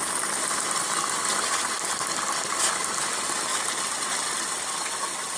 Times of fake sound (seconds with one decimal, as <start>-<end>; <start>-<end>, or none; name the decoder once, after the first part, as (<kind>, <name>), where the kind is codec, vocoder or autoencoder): none